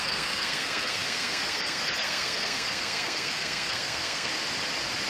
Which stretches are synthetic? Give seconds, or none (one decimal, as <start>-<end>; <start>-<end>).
0.0-4.3